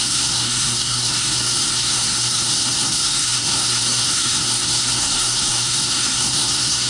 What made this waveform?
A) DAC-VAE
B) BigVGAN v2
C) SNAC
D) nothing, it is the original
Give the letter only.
C